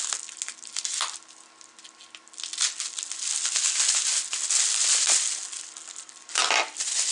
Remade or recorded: recorded